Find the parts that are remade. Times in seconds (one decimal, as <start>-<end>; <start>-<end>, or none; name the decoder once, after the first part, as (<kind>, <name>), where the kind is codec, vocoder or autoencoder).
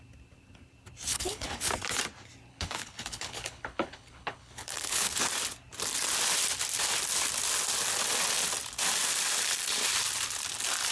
1.1-1.7 (codec, HILCodec); 2.5-5.2